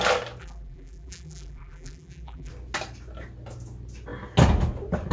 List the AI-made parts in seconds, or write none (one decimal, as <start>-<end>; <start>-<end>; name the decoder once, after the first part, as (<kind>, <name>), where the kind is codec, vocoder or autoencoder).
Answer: 0.4-2.5 (vocoder, BigVGAN v2)